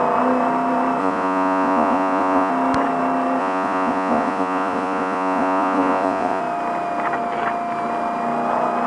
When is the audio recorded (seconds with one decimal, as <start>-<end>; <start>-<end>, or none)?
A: 0.0-1.0; 2.5-3.4; 6.4-8.9